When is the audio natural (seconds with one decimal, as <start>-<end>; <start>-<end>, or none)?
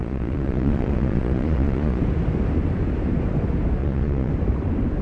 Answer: 2.0-3.8; 4.3-5.0